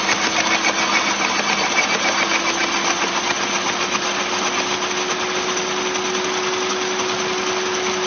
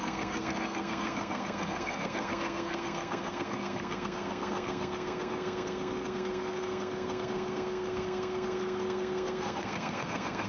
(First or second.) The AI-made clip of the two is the second